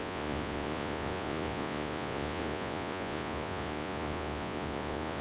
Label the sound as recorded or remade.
remade